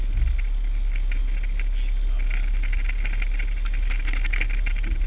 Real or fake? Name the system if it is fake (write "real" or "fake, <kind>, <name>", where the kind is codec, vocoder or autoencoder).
real